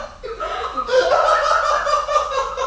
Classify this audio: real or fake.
fake